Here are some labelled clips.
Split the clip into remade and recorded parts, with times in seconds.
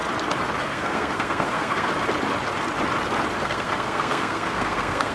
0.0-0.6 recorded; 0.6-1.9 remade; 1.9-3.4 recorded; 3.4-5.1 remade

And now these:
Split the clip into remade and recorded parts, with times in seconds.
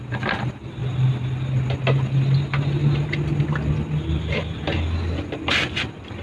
0.0-6.2 recorded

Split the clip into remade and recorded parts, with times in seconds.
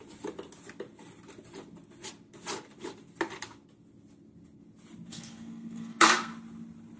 0.0-5.1 recorded; 5.1-6.3 remade; 6.3-7.0 recorded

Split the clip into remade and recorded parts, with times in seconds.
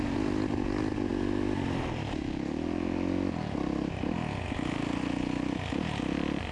0.0-6.5 recorded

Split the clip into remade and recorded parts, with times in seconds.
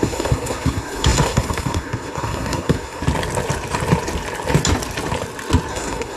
0.0-3.0 remade; 3.0-5.7 recorded; 5.7-6.2 remade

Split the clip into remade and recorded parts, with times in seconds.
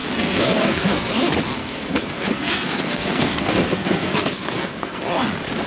0.0-1.1 remade; 1.1-1.6 recorded; 1.6-5.0 remade; 5.0-5.7 recorded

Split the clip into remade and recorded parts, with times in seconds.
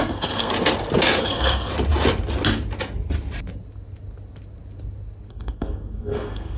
0.0-0.5 remade; 0.5-1.2 recorded; 1.2-1.7 remade; 1.7-5.3 recorded; 5.3-6.6 remade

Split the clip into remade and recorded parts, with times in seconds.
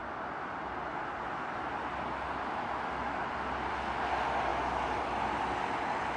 0.0-6.2 recorded